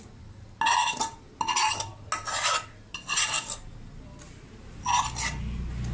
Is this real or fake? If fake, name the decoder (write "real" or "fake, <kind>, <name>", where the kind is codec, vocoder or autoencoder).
real